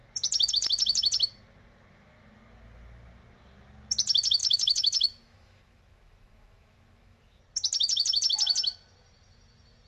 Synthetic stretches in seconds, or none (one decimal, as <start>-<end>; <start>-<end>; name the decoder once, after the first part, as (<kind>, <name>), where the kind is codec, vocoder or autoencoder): 4.4-7.4 (autoencoder, DAC-VAE)